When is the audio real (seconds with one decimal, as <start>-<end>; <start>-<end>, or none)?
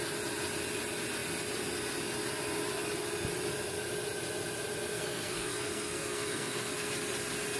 0.0-4.9; 6.9-7.6